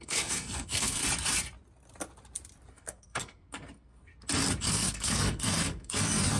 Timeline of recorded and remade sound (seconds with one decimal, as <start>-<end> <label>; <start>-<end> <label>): 0.0-1.0 remade; 1.0-2.7 recorded; 2.7-4.1 remade; 4.1-4.6 recorded; 4.6-6.4 remade